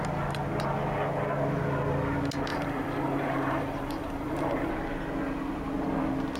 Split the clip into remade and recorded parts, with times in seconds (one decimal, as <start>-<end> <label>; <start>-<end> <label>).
0.0-2.5 recorded; 2.5-4.7 remade; 4.7-6.4 recorded